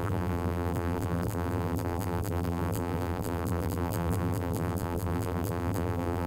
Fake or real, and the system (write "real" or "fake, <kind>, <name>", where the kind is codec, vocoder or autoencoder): fake, vocoder, BigVGAN v2